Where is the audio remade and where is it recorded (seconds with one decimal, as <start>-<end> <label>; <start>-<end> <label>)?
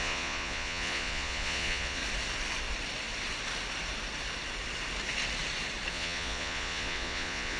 0.0-2.0 remade; 2.0-5.9 recorded; 5.9-7.6 remade